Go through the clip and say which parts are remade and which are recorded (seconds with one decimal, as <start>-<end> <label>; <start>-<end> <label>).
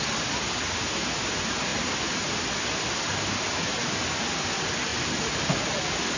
0.0-1.7 recorded; 1.7-2.7 remade; 2.7-4.9 recorded; 4.9-5.8 remade; 5.8-6.2 recorded